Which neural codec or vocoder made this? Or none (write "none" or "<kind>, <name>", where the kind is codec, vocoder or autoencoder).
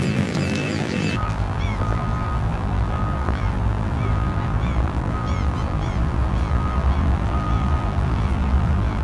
vocoder, BigVGAN v2